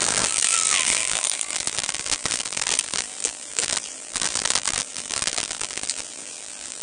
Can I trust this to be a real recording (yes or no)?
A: no